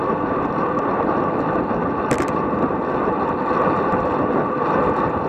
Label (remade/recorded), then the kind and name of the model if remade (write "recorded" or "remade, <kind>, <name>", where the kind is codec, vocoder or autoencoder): recorded